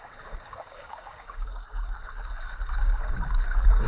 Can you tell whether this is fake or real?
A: fake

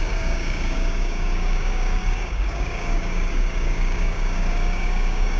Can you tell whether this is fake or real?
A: fake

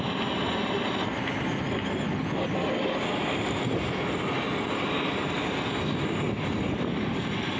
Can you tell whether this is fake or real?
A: real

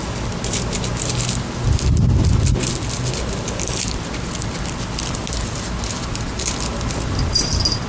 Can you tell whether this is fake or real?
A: real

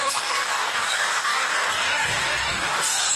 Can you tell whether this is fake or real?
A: fake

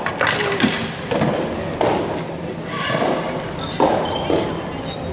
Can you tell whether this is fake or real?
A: real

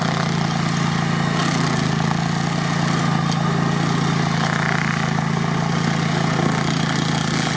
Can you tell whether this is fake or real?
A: real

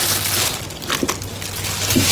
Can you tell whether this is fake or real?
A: real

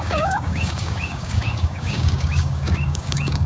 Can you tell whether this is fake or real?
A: fake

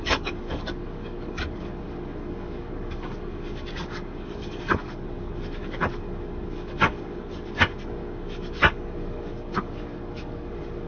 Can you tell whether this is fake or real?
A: fake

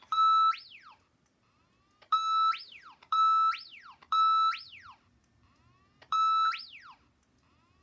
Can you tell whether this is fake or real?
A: real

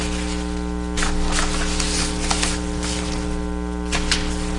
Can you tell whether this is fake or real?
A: real